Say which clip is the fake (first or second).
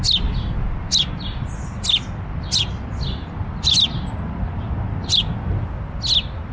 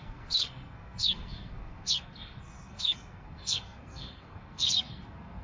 second